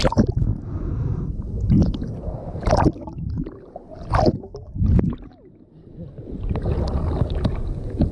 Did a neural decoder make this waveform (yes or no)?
no